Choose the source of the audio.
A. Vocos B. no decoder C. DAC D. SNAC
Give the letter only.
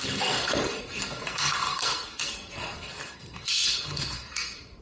D